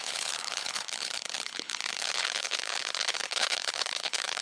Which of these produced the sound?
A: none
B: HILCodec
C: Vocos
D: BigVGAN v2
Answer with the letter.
B